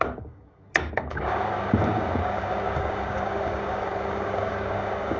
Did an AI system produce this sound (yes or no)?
yes